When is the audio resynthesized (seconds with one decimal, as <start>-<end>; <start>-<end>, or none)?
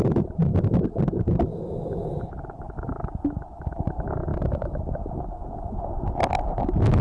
0.5-1.0; 4.3-4.8